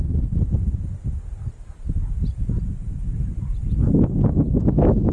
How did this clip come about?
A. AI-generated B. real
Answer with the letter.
B